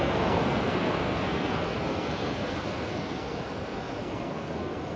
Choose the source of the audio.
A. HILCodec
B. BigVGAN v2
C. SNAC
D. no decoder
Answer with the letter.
C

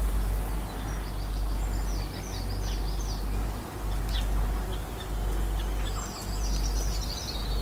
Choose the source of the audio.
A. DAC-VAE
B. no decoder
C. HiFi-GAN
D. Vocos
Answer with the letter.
B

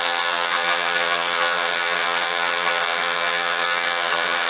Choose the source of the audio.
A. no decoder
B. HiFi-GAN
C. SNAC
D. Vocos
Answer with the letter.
B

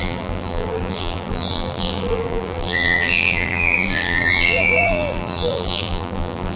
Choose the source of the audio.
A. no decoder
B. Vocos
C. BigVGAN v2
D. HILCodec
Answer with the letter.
C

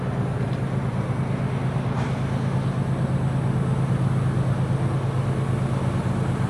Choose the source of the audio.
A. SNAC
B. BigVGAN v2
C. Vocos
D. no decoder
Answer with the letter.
D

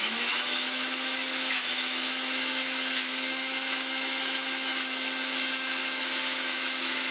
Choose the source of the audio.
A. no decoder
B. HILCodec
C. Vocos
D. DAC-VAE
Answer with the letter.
D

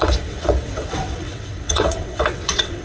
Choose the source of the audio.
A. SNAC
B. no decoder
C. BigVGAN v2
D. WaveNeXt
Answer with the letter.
D